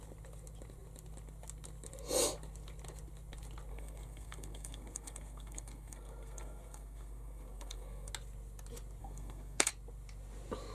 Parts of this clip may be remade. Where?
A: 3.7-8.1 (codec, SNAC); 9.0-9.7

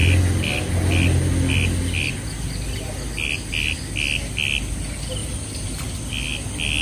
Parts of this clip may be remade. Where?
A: 5.2-5.8 (vocoder, BigVGAN v2)

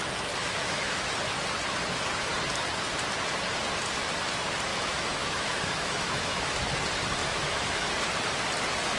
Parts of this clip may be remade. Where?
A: 0.4-1.1 (autoencoder, DAC-VAE); 4.7-6.6; 7.2-7.9

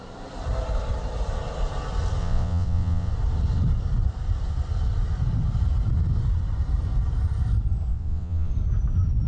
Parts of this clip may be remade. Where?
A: 2.2-3.1 (vocoder, WaveNeXt); 7.9-8.5

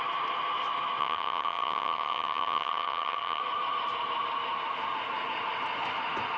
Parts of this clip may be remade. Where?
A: 1.0-3.4 (vocoder, HiFi-GAN)

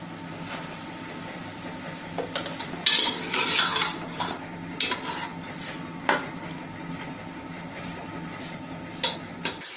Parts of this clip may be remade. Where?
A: none

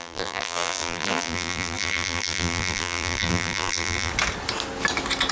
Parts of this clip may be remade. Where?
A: 0.0-4.1 (vocoder, BigVGAN v2)

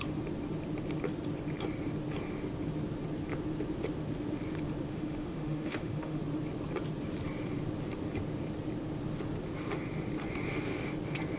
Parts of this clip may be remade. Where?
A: 4.9-6.2 (autoencoder, DAC-VAE)